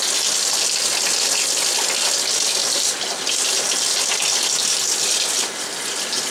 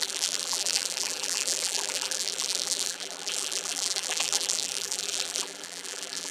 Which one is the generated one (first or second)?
second